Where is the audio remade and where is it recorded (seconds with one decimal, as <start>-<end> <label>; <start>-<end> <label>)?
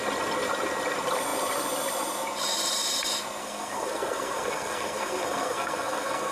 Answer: 0.0-3.4 recorded; 3.4-6.3 remade